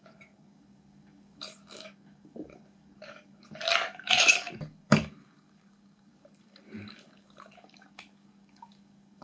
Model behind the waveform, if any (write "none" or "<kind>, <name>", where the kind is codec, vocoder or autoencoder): codec, DAC